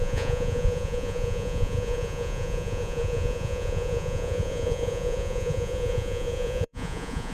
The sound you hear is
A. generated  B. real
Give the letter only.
A